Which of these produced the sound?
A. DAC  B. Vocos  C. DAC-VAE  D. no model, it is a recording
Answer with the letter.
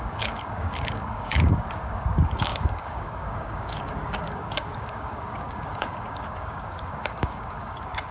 A